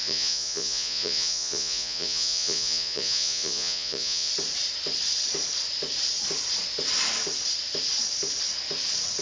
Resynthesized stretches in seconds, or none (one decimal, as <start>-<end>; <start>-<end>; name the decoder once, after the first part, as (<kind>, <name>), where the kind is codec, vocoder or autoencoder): 0.0-4.3 (vocoder, Vocos)